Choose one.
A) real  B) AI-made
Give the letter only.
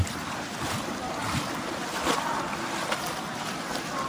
A